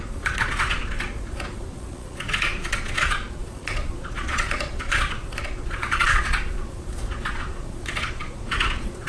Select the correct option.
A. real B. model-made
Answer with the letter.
B